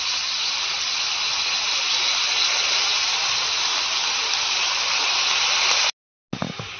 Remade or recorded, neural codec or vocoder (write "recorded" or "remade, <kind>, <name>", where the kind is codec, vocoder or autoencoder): recorded